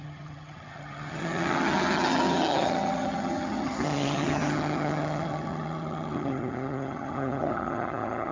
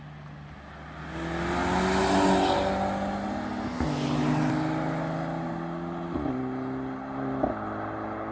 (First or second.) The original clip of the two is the second